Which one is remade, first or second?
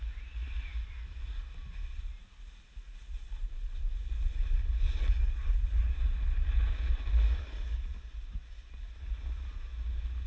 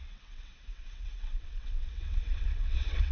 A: second